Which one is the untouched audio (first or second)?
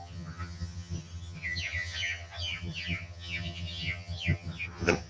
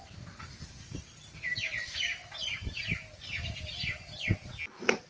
second